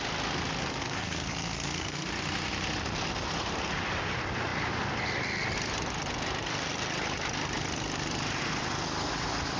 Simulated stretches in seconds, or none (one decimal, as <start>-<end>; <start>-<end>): 0.6-2.1